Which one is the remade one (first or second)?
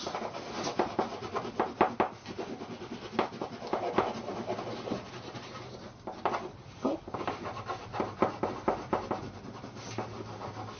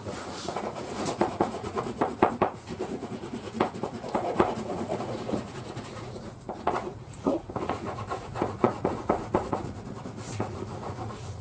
second